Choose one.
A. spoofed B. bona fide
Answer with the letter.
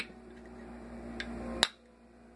B